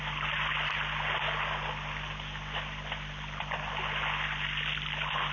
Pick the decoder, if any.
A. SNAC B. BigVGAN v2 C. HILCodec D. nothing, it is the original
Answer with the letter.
D